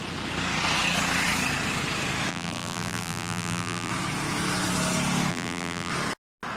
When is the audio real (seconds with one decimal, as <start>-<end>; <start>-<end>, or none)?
0.0-2.3; 3.9-5.3; 5.9-6.6